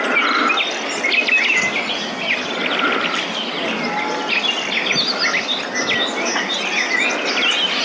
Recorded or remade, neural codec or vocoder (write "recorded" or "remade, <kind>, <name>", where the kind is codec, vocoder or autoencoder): recorded